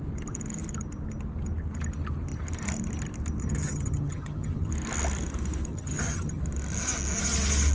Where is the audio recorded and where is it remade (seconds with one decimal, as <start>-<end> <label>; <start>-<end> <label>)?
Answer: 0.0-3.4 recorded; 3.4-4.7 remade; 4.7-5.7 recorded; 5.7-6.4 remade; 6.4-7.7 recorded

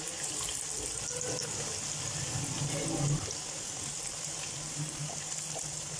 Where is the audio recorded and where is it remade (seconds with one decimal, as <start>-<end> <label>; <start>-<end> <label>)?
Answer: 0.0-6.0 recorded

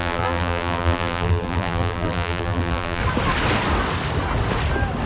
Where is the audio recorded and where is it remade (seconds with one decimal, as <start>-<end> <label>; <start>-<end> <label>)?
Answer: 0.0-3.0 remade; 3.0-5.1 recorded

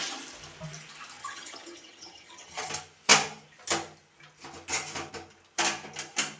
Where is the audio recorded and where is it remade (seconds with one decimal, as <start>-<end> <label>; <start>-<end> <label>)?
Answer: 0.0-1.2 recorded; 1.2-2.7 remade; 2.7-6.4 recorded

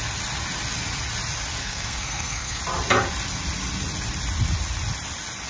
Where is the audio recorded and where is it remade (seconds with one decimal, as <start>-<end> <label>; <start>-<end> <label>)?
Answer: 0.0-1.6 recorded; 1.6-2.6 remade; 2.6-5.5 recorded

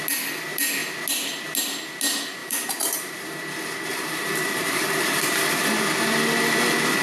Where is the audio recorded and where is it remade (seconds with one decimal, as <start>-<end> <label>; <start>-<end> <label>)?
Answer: 0.0-2.4 recorded; 2.4-3.4 remade; 3.4-3.9 recorded; 3.9-5.7 remade; 5.7-7.0 recorded

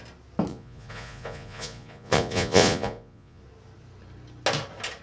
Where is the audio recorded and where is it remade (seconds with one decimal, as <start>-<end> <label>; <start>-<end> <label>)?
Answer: 0.0-0.5 recorded; 0.5-3.4 remade; 3.4-5.0 recorded

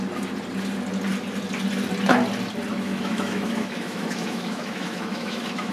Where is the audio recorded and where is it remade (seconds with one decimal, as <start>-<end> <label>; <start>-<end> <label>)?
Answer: 0.0-2.7 recorded; 2.7-5.7 remade